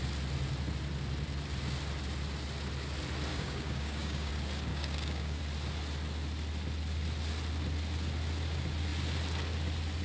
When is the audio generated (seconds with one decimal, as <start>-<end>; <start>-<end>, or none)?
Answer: 3.3-4.3; 4.7-5.4